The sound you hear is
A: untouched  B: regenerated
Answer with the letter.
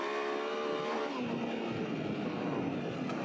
A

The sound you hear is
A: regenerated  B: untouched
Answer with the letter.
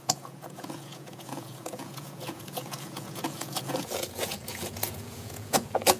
A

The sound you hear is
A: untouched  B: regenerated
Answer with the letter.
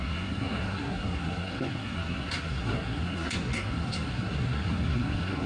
B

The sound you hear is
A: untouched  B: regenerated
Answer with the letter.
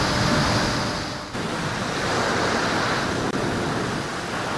A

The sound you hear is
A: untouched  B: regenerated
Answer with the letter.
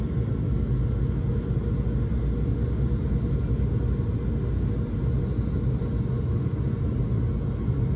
A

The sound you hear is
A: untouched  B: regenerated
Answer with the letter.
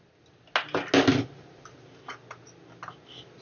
A